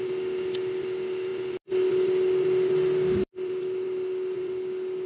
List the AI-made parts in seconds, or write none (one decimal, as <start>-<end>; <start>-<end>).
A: none